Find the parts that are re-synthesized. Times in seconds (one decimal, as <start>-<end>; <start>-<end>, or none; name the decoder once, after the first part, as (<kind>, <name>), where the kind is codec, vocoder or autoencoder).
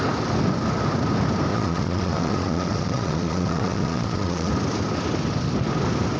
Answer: 1.5-4.5 (vocoder, Vocos)